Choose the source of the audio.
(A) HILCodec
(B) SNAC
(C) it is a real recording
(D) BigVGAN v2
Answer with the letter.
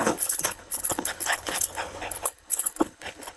A